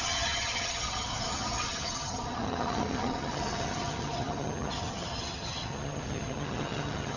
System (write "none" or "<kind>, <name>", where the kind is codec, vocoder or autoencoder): vocoder, HiFi-GAN